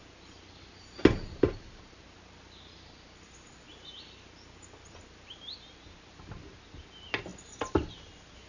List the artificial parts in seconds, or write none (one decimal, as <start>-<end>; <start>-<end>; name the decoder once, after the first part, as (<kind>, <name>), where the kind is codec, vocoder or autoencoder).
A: none